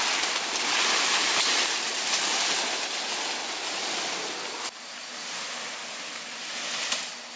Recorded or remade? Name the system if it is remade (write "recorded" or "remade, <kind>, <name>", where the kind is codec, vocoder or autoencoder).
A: recorded